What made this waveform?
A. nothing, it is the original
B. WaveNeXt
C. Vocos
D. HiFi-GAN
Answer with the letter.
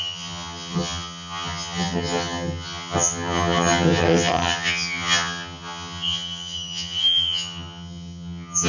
D